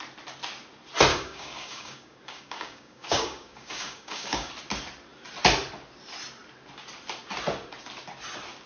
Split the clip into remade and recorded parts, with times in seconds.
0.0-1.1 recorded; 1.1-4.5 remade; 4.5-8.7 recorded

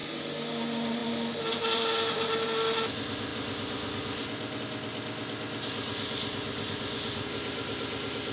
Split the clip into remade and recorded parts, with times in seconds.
0.0-0.5 remade; 0.5-8.3 recorded

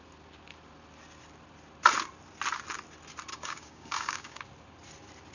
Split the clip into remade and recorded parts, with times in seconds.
0.0-3.3 recorded; 3.3-4.4 remade; 4.4-5.3 recorded

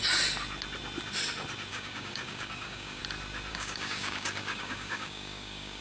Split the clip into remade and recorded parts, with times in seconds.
0.0-1.7 recorded; 1.7-3.0 remade; 3.0-3.5 recorded; 3.5-5.8 remade

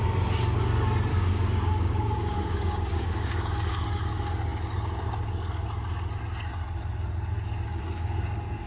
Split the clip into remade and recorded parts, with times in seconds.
0.0-1.1 recorded; 1.1-4.0 remade; 4.0-7.7 recorded; 7.7-8.7 remade